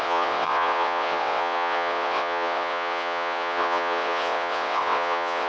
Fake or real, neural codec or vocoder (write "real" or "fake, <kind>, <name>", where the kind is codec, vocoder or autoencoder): fake, vocoder, WaveNeXt